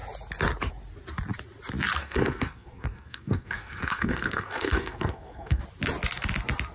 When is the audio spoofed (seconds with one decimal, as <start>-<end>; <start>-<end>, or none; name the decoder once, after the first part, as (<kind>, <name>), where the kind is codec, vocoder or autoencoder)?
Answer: 2.0-5.6 (codec, SNAC)